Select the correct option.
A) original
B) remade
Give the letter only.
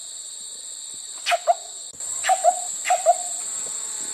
B